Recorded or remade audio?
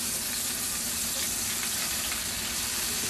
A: recorded